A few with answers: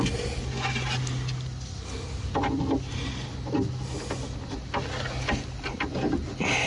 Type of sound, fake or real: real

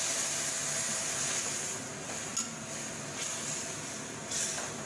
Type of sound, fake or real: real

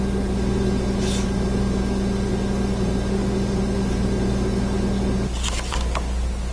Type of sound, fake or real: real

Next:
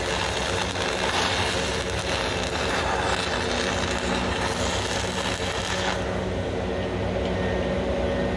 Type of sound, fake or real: real